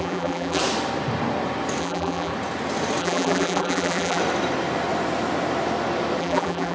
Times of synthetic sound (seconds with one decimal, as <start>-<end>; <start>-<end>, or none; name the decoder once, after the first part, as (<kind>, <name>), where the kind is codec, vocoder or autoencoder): 0.0-0.6 (vocoder, BigVGAN v2); 1.8-2.3; 3.0-4.2; 6.2-6.7